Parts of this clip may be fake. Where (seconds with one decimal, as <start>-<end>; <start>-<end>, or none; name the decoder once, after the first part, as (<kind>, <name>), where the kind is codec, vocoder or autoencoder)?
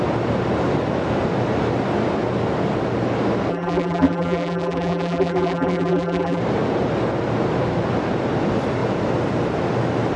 3.5-6.4 (vocoder, BigVGAN v2)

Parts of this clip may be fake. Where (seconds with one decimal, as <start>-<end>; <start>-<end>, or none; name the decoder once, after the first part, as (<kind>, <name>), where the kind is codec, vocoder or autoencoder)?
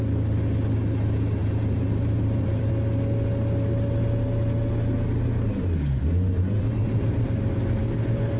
1.4-2.7 (vocoder, BigVGAN v2); 6.8-7.3